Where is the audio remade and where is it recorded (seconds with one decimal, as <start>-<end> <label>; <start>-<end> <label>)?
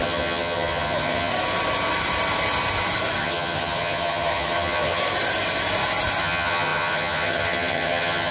0.0-1.3 remade; 1.3-3.2 recorded; 3.2-5.0 remade; 5.0-6.2 recorded; 6.2-8.3 remade